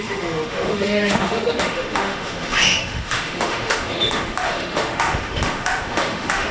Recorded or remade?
remade